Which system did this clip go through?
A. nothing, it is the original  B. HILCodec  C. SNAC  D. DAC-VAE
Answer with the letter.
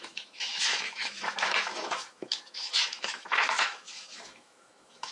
D